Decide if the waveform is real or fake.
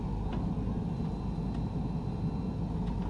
real